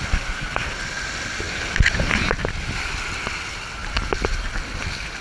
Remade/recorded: recorded